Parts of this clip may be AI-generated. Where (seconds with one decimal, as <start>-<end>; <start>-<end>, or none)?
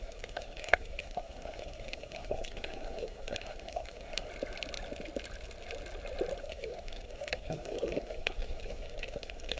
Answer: 0.0-4.3; 6.4-9.6